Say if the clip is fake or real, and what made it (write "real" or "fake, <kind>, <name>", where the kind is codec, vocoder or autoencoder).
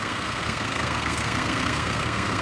fake, codec, SNAC